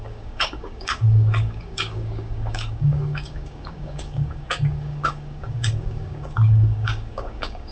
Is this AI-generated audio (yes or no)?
yes